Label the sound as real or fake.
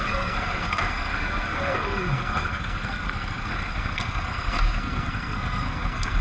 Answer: fake